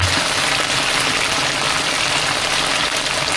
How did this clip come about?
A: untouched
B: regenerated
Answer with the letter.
A